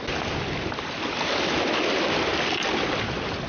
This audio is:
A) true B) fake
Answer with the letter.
A